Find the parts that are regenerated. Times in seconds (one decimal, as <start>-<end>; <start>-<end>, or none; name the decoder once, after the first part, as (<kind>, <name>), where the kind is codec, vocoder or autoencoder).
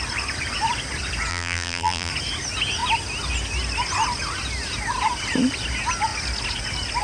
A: 1.3-2.1 (vocoder, BigVGAN v2)